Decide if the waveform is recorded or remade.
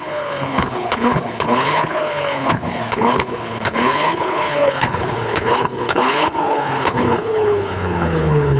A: remade